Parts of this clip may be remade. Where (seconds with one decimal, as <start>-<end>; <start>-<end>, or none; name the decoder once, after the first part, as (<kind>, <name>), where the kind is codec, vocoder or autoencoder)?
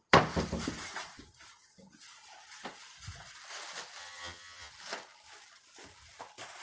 4.0-4.7 (vocoder, HiFi-GAN)